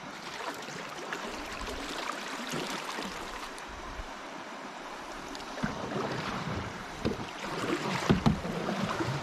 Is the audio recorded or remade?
remade